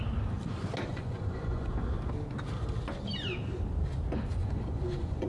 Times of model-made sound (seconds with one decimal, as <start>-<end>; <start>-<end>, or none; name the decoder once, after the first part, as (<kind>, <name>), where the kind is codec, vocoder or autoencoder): 0.9-1.7 (vocoder, Vocos); 4.4-5.3